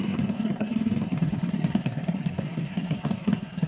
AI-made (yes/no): yes